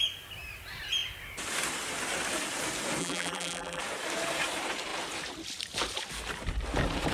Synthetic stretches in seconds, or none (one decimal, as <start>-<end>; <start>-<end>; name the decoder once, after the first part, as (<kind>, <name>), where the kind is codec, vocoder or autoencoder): 3.0-3.8 (vocoder, BigVGAN v2)